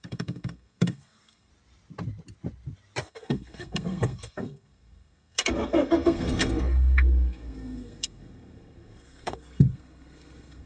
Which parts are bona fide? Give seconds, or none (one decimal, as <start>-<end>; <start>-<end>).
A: 1.5-3.0